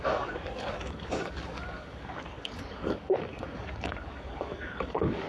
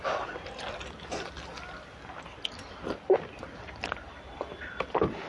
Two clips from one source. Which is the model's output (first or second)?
first